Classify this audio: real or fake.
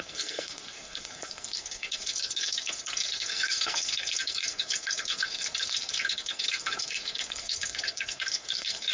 fake